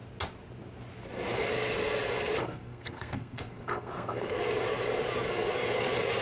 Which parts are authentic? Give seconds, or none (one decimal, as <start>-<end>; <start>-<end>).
0.0-2.4; 4.4-6.2